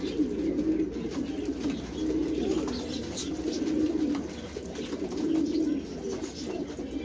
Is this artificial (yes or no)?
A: no